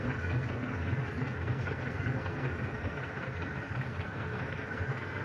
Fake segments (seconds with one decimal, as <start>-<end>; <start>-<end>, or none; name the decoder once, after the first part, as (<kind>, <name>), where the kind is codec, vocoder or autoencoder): 0.0-5.2 (codec, SNAC)